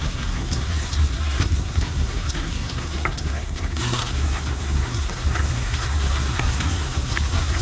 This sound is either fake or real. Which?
fake